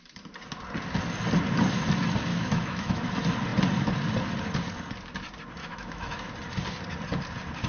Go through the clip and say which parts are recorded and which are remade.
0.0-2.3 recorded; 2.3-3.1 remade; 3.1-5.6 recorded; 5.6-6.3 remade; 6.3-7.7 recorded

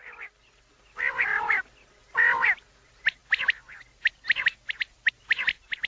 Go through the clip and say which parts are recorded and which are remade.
0.0-5.9 recorded

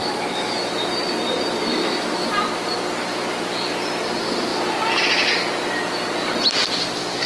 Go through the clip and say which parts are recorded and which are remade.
0.0-0.7 remade; 0.7-1.7 recorded; 1.7-2.3 remade; 2.3-7.3 recorded

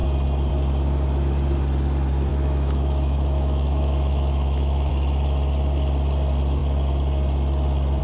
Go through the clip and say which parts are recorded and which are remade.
0.0-2.3 recorded; 2.3-4.9 remade; 4.9-8.0 recorded

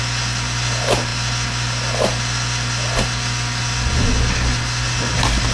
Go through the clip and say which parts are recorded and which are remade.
0.0-5.5 recorded